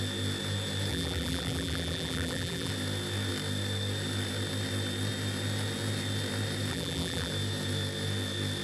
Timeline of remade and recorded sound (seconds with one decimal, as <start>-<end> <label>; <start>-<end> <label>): 0.0-0.9 recorded; 0.9-2.7 remade; 2.7-6.7 recorded; 6.7-7.3 remade; 7.3-8.6 recorded